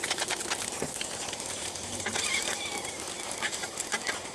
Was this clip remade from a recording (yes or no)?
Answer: yes